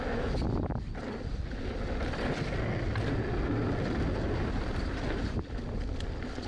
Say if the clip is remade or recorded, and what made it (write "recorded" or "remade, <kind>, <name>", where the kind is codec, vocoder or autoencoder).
recorded